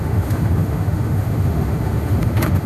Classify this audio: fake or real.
fake